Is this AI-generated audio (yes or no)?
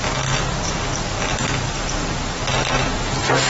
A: no